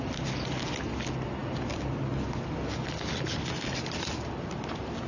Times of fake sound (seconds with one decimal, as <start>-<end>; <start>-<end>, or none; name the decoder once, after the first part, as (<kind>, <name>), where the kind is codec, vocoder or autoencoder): none

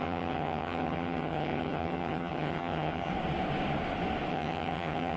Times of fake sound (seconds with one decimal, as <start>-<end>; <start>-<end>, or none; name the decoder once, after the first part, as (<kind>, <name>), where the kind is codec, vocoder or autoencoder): 0.0-3.1 (vocoder, HiFi-GAN); 4.3-5.2

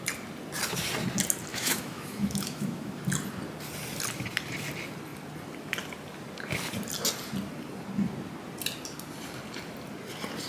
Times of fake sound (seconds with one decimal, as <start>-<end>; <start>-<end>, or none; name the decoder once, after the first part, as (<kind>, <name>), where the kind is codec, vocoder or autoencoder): 1.5-3.0 (autoencoder, DAC-VAE)

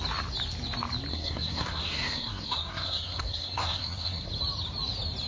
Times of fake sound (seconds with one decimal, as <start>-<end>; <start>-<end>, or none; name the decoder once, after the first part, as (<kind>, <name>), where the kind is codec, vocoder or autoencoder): 1.1-4.3 (codec, SNAC)

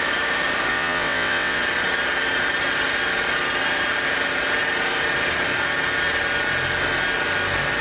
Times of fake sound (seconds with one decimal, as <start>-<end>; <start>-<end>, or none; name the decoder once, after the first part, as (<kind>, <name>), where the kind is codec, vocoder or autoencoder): 0.7-1.6 (vocoder, WaveNeXt)